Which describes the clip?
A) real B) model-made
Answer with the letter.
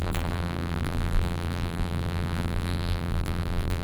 B